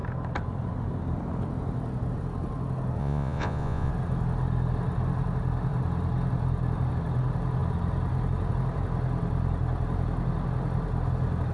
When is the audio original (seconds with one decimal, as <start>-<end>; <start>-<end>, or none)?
0.0-3.0; 3.9-11.5